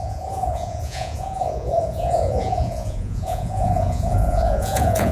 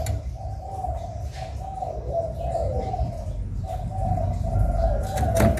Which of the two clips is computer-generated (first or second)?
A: first